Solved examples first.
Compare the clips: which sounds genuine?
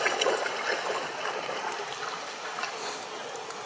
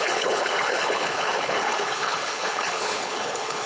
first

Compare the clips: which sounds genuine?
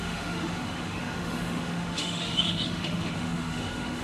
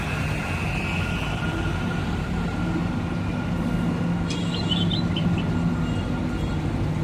second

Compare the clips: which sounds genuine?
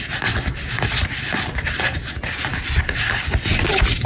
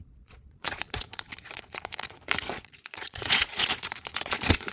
first